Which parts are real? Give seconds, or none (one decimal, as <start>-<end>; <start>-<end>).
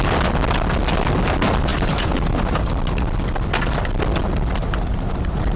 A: 0.0-1.7; 2.7-4.6